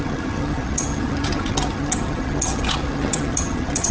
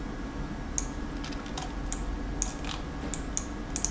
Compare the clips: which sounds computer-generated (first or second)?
first